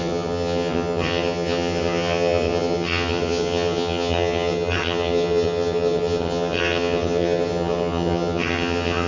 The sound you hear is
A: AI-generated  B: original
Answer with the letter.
A